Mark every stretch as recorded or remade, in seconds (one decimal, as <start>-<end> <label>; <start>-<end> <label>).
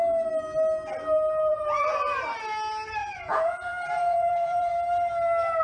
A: 0.0-1.5 recorded; 1.5-2.2 remade; 2.2-3.0 recorded; 3.0-4.7 remade; 4.7-5.6 recorded